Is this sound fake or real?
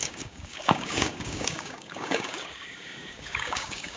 fake